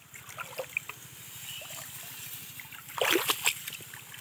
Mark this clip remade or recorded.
recorded